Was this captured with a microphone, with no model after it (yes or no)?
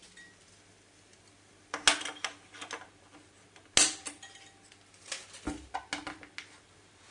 yes